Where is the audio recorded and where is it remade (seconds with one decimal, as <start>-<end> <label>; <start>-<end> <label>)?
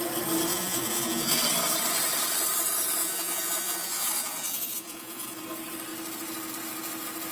0.0-0.5 recorded; 0.5-1.4 remade; 1.4-3.0 recorded; 3.0-5.4 remade; 5.4-7.3 recorded